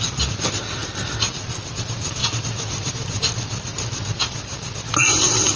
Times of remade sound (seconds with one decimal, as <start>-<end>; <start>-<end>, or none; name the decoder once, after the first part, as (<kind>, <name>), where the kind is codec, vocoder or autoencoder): none